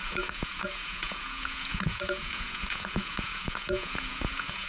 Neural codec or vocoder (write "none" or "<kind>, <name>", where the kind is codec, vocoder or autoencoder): vocoder, Vocos